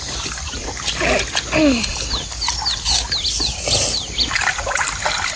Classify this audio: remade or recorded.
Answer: recorded